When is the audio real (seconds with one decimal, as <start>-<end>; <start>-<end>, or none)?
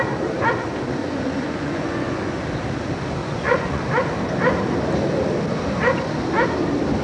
0.0-1.0; 2.4-3.2; 3.8-7.0